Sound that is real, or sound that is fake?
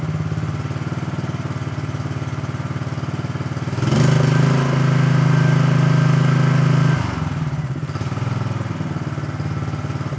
real